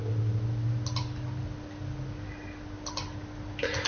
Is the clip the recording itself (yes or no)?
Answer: yes